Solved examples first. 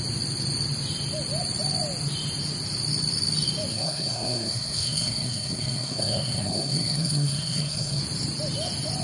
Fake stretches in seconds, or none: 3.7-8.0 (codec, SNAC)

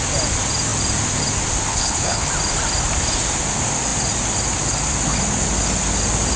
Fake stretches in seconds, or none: 1.7-2.3 (codec, HILCodec)

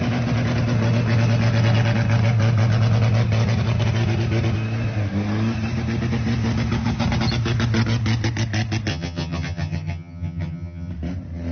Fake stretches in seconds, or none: 8.9-10.9 (vocoder, HiFi-GAN)

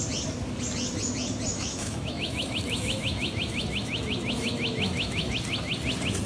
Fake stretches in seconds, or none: 1.5-5.3 (autoencoder, DAC-VAE)

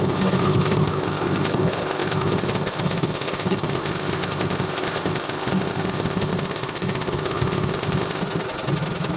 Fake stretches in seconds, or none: 0.0-8.2 (codec, ZipCodec)

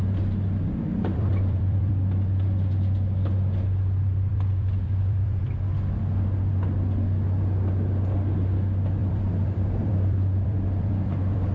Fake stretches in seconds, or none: 0.9-1.9 (vocoder, BigVGAN v2); 4.3-5.4; 9.0-11.5

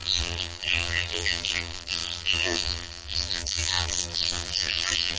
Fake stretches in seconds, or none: 0.0-5.2 (vocoder, BigVGAN v2)

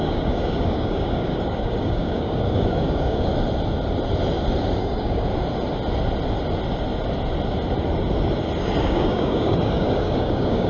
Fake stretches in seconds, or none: 0.0-3.3 (codec, DAC); 4.8-5.3; 8.8-10.7